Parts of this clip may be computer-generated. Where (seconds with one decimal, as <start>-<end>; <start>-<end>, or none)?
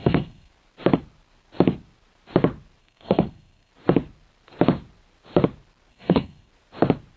0.0-0.5; 2.8-3.7; 5.9-6.5